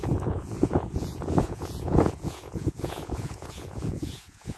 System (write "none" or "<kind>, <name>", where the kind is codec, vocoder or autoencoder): vocoder, Vocos